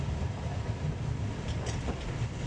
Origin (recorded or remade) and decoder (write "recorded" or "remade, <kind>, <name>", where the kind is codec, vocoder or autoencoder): recorded